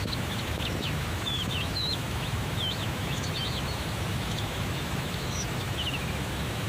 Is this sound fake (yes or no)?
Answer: yes